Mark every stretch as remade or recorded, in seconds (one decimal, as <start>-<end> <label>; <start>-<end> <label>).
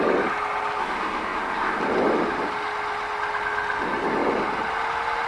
0.0-0.8 recorded; 0.8-1.8 remade; 1.8-5.3 recorded